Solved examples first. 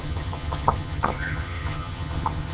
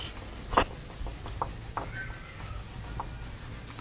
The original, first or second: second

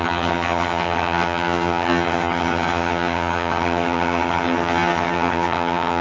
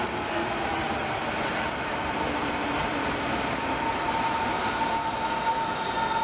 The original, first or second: second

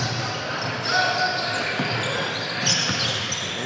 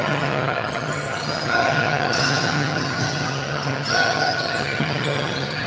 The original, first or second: first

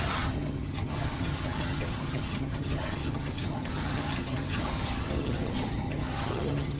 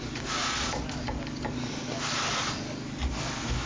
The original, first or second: second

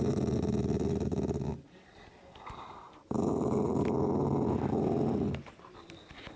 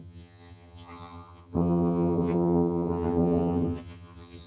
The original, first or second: first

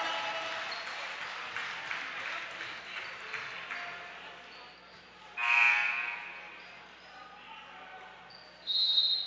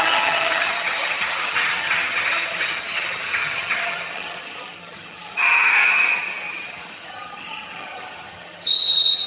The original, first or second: first